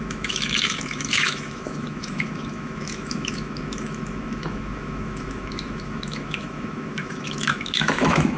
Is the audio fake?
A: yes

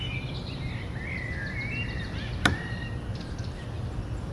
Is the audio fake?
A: no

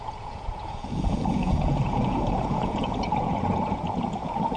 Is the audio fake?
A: yes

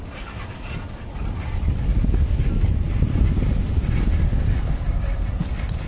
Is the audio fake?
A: no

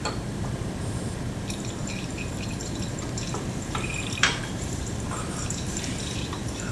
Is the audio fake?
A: yes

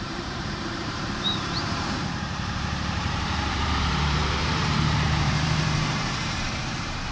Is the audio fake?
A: yes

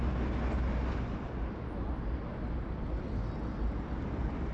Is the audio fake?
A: no